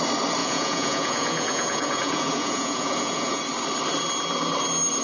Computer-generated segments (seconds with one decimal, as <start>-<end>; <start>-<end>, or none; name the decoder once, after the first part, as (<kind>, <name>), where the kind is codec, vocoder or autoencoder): 0.4-3.4 (vocoder, Vocos)